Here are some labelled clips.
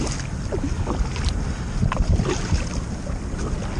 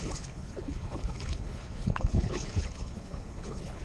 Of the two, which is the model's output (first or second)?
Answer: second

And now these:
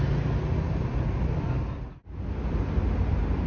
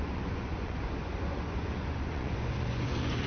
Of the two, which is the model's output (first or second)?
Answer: second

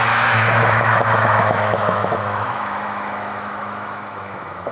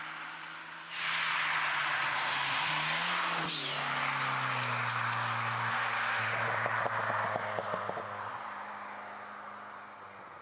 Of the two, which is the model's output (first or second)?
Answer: first